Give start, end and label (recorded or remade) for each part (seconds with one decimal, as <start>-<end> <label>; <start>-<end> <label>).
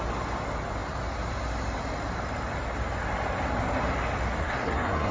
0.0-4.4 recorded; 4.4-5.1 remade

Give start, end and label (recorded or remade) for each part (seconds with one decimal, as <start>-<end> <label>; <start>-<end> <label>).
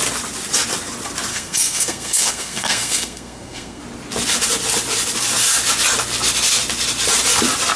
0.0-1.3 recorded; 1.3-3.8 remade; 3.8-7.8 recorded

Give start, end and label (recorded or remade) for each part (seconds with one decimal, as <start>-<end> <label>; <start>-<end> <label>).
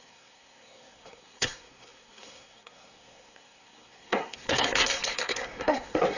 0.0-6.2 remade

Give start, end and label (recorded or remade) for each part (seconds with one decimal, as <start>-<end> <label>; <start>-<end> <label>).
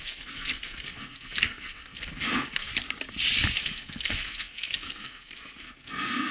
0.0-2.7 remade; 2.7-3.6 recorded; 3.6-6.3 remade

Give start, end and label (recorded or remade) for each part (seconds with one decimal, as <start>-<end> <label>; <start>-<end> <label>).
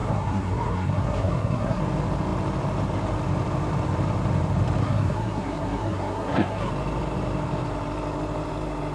0.0-1.8 remade; 1.8-4.8 recorded; 4.8-6.7 remade; 6.7-8.9 recorded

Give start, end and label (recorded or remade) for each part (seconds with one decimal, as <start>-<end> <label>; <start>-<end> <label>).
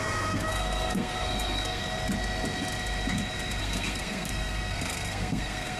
0.0-1.8 remade; 1.8-3.6 recorded; 3.6-5.8 remade